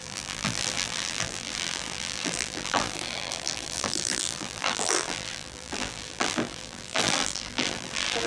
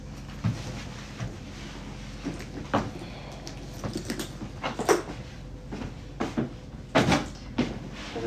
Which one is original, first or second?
second